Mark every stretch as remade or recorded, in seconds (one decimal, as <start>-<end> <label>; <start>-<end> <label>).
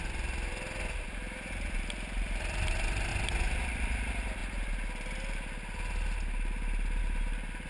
0.0-7.7 recorded